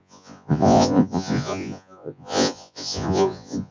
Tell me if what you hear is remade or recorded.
remade